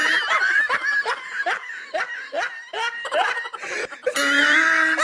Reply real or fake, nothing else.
real